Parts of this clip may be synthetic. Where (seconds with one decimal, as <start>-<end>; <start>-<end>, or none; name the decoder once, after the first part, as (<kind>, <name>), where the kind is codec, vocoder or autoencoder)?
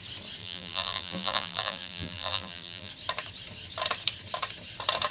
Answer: 0.4-2.9 (vocoder, BigVGAN v2)